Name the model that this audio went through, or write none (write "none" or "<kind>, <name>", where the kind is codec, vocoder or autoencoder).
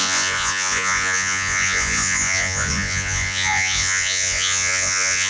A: vocoder, Vocos